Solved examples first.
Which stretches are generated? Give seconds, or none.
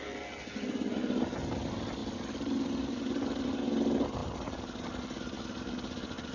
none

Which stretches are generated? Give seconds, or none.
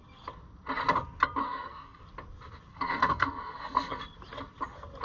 1.4-2.0 (codec, SNAC); 2.7-4.0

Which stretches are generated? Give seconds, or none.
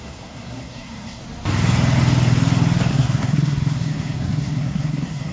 0.0-1.2 (codec, SNAC); 2.9-5.3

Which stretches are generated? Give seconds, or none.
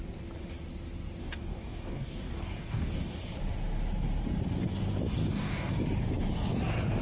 1.2-3.2 (codec, DAC); 5.2-5.7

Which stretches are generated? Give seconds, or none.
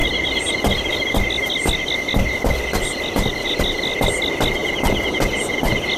none